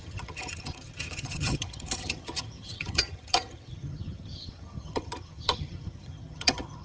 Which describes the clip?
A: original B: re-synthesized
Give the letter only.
B